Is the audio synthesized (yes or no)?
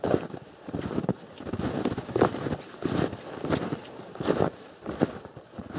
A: no